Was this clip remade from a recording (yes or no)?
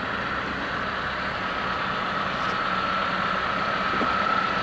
no